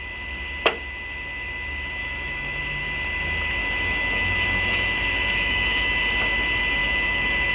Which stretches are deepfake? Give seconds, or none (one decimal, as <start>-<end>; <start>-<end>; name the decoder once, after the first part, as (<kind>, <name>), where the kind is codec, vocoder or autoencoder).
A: 2.0-2.6 (autoencoder, DAC-VAE); 3.6-6.0; 6.8-7.5